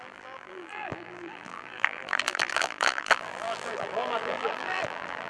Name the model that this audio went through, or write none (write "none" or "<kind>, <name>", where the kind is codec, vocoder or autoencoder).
vocoder, BigVGAN v2